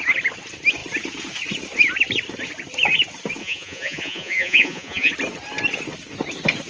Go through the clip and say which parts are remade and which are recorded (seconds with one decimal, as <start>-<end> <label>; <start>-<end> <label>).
0.0-3.4 recorded; 3.4-5.1 remade; 5.1-6.7 recorded